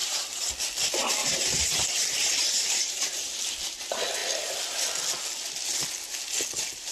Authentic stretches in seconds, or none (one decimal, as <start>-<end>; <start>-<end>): 0.5-1.2; 3.3-6.9